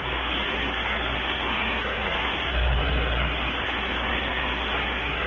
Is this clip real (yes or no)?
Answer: no